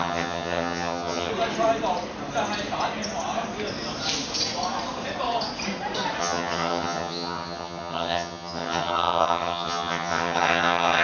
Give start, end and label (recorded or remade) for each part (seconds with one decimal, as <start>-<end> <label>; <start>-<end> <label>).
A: 0.0-1.3 remade; 1.3-6.2 recorded; 6.2-11.0 remade